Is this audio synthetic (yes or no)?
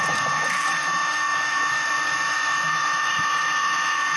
yes